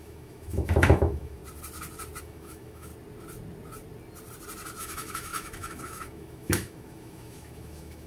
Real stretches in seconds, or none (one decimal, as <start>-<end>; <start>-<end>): 1.4-2.2; 2.9-4.8